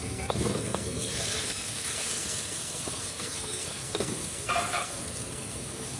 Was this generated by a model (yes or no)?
yes